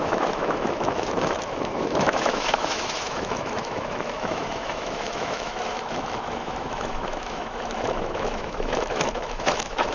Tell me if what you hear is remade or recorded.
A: remade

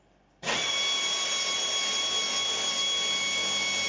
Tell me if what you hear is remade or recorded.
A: recorded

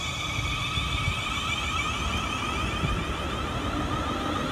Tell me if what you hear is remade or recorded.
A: recorded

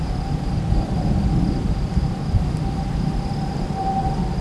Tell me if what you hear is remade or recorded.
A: recorded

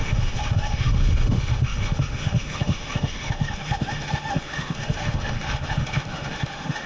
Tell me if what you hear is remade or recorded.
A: remade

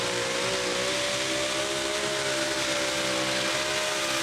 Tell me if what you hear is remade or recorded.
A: recorded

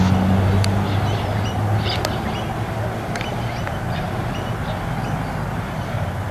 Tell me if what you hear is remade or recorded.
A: recorded